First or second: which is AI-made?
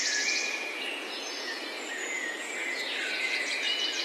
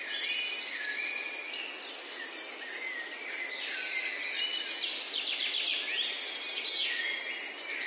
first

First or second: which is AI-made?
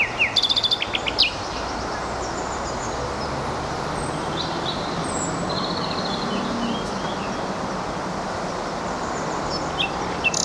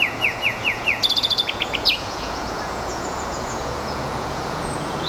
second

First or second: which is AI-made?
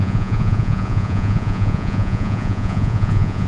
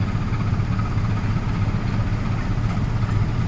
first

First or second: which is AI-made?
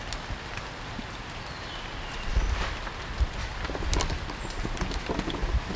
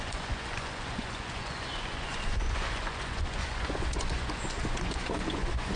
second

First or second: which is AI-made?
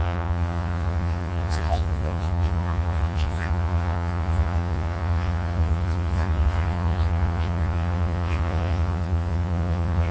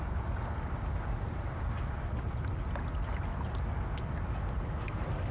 first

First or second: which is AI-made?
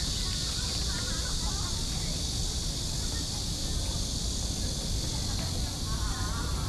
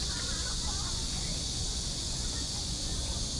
second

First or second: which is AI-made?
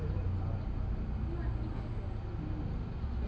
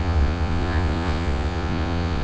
second